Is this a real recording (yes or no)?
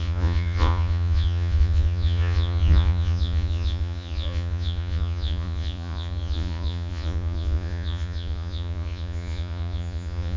no